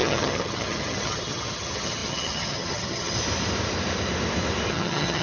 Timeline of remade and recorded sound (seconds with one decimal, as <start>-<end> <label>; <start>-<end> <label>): 0.0-3.2 remade; 3.2-4.7 recorded; 4.7-5.2 remade